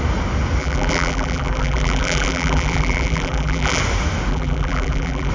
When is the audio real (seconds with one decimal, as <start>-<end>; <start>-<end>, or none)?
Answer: 0.0-0.6; 3.8-4.3